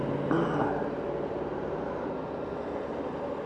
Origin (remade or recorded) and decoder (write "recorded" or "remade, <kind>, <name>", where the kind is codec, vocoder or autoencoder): recorded